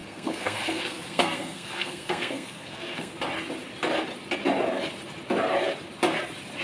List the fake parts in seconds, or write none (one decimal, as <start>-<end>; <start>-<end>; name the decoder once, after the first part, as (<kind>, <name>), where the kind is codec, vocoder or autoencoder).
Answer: 0.0-3.1 (codec, SNAC)